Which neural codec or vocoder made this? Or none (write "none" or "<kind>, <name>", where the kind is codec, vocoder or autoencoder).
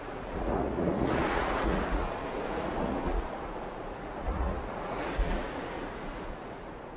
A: vocoder, Vocos